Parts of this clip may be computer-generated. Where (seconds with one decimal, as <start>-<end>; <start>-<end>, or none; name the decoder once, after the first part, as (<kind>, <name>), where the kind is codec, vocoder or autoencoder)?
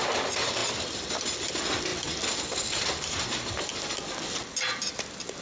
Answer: none